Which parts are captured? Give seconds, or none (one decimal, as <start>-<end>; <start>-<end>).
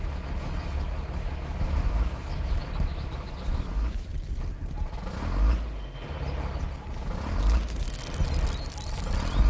4.1-9.5